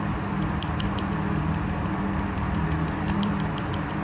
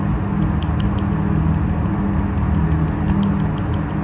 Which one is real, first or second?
second